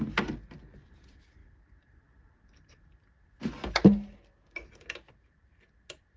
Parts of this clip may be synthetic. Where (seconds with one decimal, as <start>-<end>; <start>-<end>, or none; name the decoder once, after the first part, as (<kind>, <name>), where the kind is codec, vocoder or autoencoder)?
none